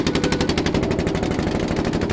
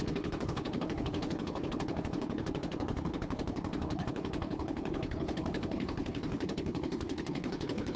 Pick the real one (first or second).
first